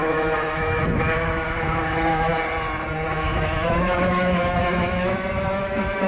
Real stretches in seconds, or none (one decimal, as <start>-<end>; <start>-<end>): 2.3-3.1